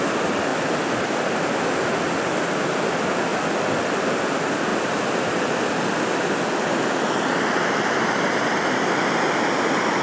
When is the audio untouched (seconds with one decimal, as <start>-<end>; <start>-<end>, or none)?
0.0-10.0